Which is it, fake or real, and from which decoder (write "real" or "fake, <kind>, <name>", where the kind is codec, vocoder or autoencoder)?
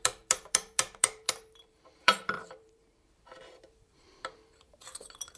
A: fake, vocoder, BigVGAN v2